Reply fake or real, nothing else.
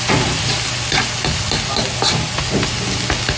real